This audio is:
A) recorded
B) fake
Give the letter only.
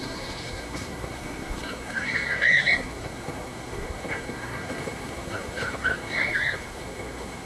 B